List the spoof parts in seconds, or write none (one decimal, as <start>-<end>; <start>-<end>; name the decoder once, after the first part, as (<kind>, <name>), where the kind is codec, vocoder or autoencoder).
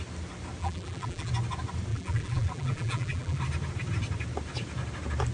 0.6-1.3 (vocoder, BigVGAN v2); 1.9-3.4